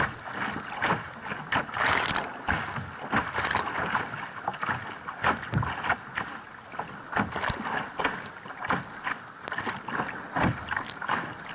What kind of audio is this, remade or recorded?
recorded